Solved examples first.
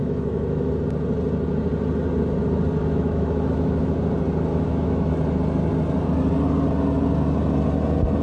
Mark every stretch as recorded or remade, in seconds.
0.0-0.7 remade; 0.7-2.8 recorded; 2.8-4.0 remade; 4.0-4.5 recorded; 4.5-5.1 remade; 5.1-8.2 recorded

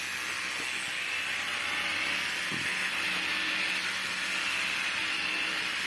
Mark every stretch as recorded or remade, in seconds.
0.0-5.9 recorded

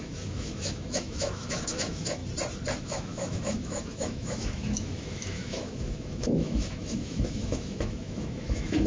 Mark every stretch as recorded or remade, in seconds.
0.0-2.2 remade; 2.2-2.8 recorded; 2.8-8.9 remade

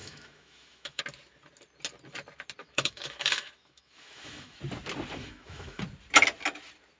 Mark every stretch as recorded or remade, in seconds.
0.0-1.0 remade; 1.0-2.6 recorded; 2.6-4.6 remade; 4.6-5.2 recorded; 5.2-5.8 remade; 5.8-7.0 recorded

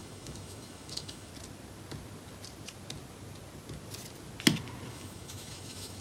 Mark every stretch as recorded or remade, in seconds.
0.0-1.3 remade; 1.3-4.9 recorded; 4.9-6.0 remade

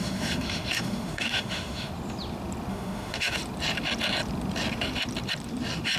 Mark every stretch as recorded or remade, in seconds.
0.0-1.9 remade; 1.9-2.7 recorded; 2.7-3.4 remade; 3.4-6.0 recorded

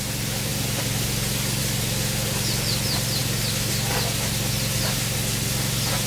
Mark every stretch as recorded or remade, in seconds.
0.0-6.1 recorded